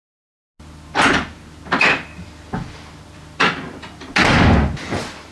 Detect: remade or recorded recorded